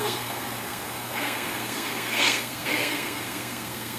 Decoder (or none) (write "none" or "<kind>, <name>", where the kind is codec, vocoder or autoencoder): codec, SNAC